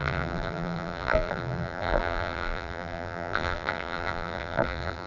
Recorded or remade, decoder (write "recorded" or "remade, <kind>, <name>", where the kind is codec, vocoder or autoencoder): remade, vocoder, BigVGAN v2